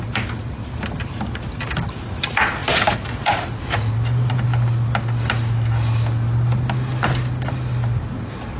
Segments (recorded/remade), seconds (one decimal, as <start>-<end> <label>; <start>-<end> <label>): 0.0-8.6 recorded